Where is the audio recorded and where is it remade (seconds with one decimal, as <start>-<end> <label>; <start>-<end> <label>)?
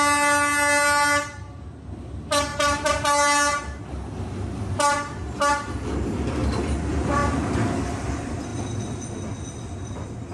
0.0-10.3 recorded